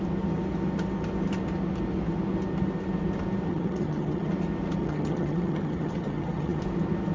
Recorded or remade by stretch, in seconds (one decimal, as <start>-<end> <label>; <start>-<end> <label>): 0.0-3.5 recorded; 3.5-4.3 remade; 4.3-4.8 recorded; 4.8-6.6 remade; 6.6-7.1 recorded